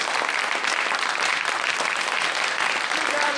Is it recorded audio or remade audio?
recorded